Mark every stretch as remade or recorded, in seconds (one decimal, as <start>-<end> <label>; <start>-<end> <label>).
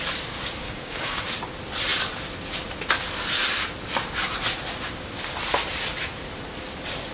0.0-0.6 recorded; 0.6-1.2 remade; 1.2-7.1 recorded